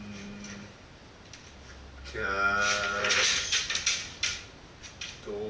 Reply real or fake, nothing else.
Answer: real